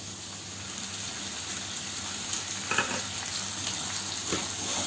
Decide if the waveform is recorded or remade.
recorded